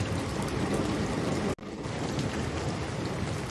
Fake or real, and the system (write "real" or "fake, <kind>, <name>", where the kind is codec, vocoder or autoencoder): real